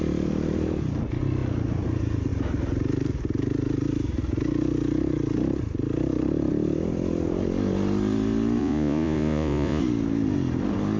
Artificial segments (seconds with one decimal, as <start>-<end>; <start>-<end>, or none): 8.6-9.8